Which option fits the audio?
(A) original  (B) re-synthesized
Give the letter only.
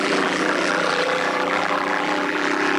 B